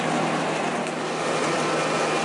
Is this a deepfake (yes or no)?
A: no